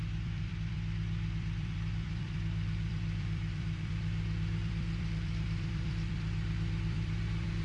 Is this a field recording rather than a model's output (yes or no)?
no